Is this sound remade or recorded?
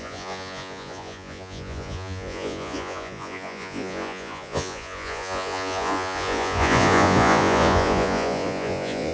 remade